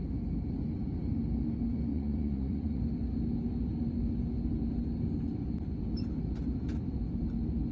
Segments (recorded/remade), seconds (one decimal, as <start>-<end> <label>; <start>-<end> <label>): 0.0-1.9 recorded; 1.9-2.8 remade; 2.8-7.7 recorded